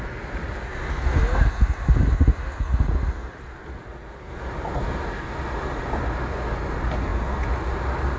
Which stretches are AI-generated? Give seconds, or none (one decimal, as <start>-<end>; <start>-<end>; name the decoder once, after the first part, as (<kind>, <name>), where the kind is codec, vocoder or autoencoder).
none